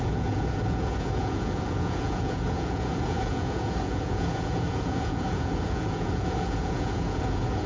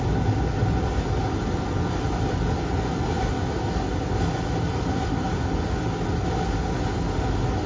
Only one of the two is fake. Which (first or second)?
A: first